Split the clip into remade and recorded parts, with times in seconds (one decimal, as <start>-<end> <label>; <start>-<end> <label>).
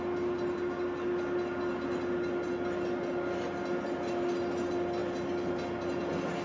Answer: 0.0-6.4 recorded